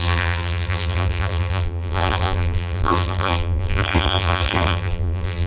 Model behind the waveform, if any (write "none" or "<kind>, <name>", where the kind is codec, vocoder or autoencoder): vocoder, BigVGAN v2